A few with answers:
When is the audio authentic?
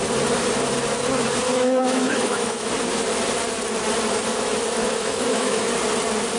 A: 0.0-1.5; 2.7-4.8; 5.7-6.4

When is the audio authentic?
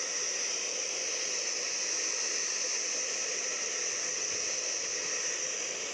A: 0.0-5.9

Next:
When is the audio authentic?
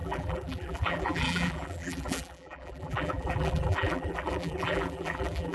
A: none